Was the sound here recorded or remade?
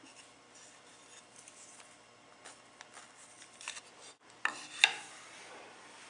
recorded